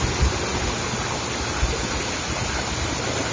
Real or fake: real